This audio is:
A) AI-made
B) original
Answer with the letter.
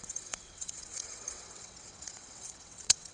A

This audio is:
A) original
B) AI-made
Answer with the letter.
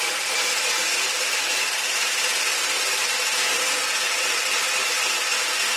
A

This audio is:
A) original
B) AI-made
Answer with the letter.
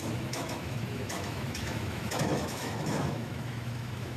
B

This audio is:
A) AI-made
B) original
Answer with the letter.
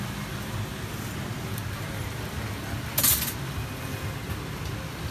B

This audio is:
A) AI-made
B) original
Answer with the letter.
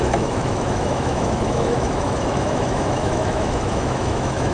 A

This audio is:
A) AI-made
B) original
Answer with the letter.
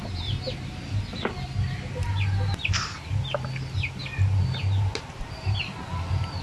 B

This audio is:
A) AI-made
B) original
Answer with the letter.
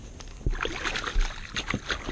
B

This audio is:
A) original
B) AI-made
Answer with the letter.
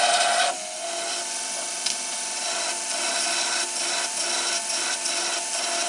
A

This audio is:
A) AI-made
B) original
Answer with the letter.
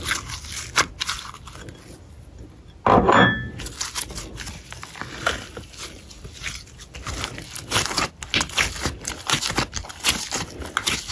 B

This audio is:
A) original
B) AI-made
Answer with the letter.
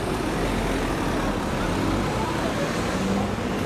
A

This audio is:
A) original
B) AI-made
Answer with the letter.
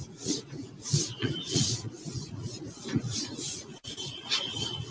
B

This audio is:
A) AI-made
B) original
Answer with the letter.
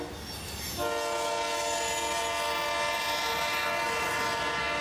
B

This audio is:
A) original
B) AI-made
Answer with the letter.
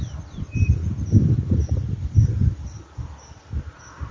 B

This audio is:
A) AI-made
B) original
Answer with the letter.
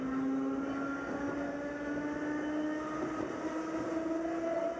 B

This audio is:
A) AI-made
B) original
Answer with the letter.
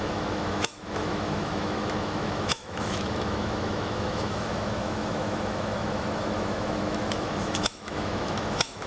A